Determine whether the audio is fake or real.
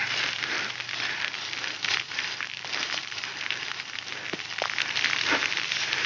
real